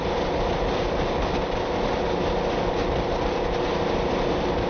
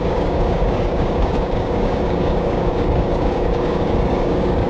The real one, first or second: first